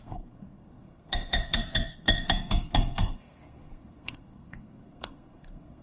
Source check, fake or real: fake